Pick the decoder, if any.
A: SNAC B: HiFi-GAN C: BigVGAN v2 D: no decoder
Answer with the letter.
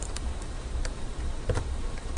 C